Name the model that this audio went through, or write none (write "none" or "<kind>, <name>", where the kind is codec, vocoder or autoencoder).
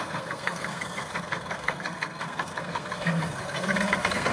codec, SNAC